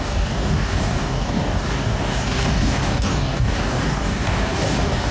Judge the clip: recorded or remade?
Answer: remade